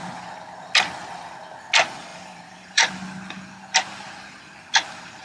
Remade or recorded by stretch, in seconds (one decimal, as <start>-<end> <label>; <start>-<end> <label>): 0.0-2.1 recorded; 2.1-2.9 remade; 2.9-5.2 recorded